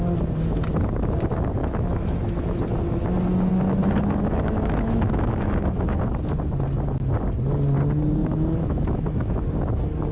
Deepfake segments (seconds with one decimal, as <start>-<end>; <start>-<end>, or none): 1.6-2.6; 3.5-6.0; 8.2-9.4